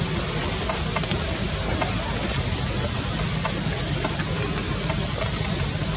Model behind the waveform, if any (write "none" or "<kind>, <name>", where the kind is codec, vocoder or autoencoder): none